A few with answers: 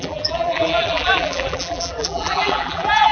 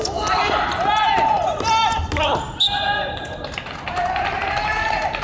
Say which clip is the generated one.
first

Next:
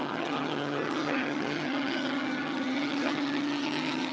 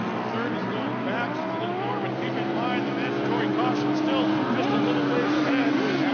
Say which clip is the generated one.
first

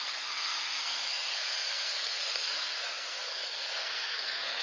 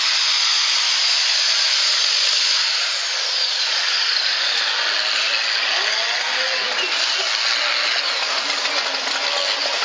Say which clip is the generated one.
first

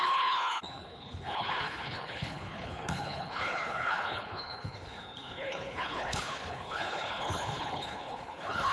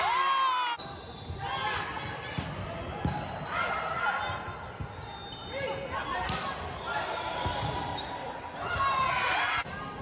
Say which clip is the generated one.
first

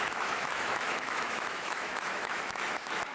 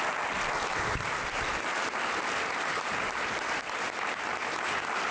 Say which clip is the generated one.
first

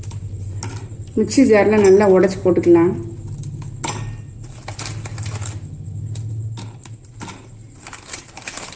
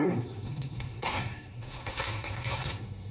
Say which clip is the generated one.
second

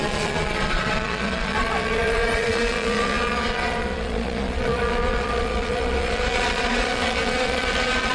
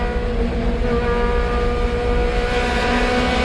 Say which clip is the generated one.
first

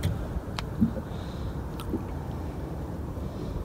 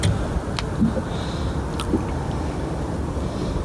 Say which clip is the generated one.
first